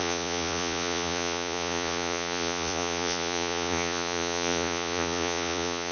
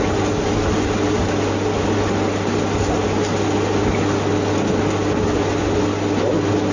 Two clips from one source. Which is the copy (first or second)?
first